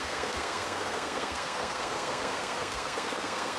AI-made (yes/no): yes